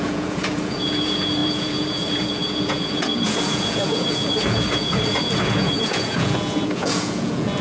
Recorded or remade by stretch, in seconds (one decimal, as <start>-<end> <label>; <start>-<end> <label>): 0.0-7.6 remade